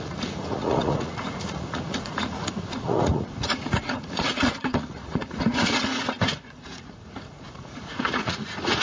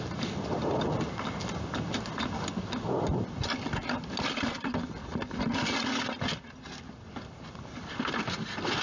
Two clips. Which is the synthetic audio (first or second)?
first